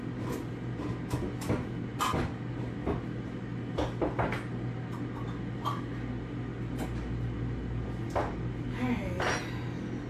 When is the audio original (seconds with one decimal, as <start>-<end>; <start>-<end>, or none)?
0.0-10.1